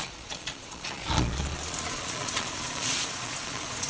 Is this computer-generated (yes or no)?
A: yes